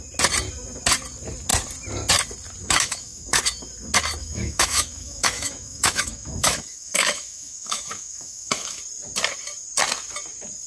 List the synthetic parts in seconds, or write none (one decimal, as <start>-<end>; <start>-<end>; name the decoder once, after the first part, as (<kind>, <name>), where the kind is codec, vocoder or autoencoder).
2.6-3.4 (autoencoder, DAC-VAE); 4.2-8.8